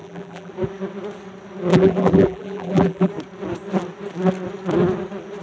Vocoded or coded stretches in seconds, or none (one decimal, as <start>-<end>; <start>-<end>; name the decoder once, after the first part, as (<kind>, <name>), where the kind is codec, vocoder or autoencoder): 0.0-0.5 (vocoder, BigVGAN v2); 1.7-3.1